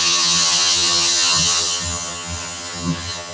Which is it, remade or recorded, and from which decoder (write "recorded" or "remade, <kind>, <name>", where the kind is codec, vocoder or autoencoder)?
remade, vocoder, HiFi-GAN